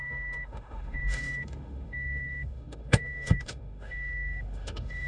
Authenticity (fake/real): fake